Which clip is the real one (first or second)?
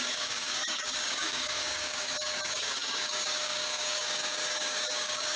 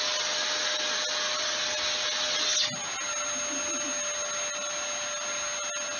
second